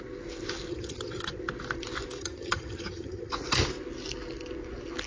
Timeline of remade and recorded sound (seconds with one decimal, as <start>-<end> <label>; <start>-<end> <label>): 0.0-0.7 recorded; 0.7-1.4 remade; 1.4-2.2 recorded; 2.2-3.3 remade; 3.3-5.1 recorded